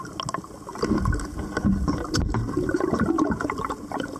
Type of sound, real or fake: real